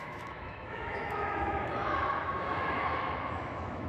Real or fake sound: fake